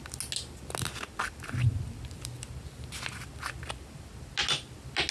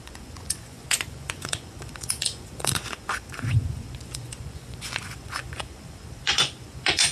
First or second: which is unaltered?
first